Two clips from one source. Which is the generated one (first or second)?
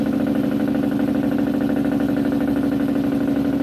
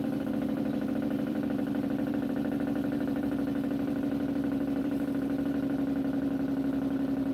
second